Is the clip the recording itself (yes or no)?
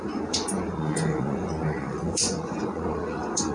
no